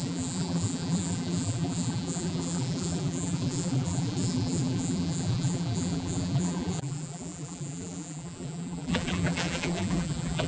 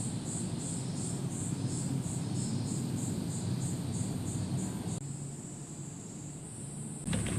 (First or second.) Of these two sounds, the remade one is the first